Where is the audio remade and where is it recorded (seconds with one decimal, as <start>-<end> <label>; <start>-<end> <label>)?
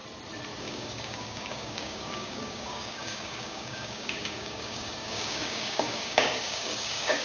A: 0.0-0.6 recorded; 0.6-7.2 remade